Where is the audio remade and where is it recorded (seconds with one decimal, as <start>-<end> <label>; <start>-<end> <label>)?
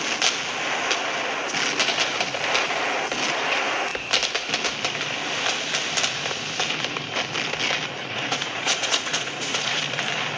0.0-8.0 recorded; 8.0-9.8 remade; 9.8-10.4 recorded